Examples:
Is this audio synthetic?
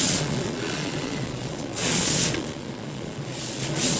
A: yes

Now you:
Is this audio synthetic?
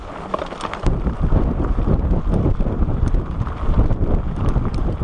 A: yes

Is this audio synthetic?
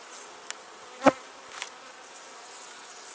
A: no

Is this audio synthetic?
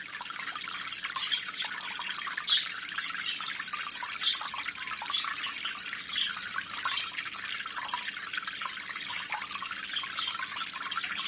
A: no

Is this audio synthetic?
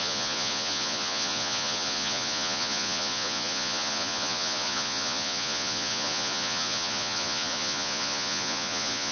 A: yes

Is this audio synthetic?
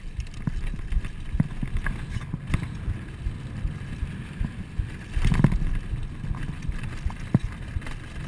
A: no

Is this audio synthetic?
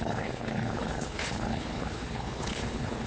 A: yes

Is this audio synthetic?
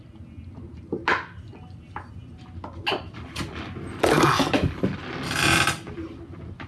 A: no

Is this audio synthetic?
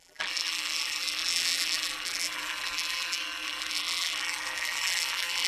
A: yes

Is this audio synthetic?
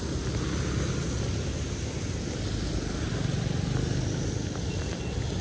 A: no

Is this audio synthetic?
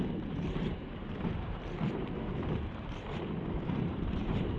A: yes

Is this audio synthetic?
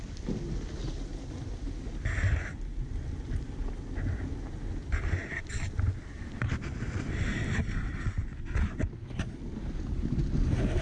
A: no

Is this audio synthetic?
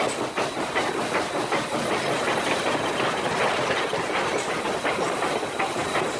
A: no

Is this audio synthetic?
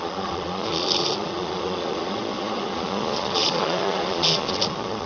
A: yes